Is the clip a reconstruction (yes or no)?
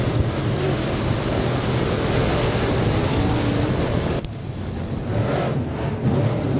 no